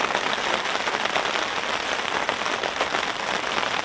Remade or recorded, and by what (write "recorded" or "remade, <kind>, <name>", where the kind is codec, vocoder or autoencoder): recorded